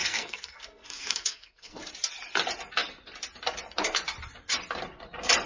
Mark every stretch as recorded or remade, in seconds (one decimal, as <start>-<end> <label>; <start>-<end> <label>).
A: 0.0-1.8 remade; 1.8-5.5 recorded

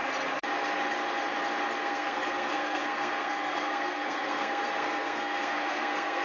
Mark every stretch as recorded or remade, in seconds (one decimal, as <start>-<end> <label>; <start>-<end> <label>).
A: 0.0-1.8 recorded; 1.8-6.2 remade

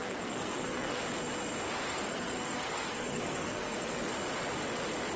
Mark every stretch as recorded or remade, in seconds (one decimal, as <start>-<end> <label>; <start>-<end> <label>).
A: 0.0-1.0 remade; 1.0-1.9 recorded; 1.9-4.1 remade; 4.1-5.2 recorded